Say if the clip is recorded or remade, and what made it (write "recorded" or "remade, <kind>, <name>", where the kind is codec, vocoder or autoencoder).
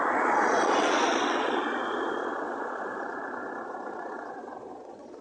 remade, vocoder, Vocos